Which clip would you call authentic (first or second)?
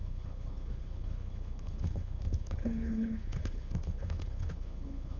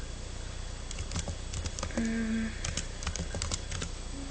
second